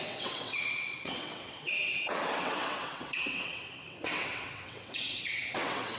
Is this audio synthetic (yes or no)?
yes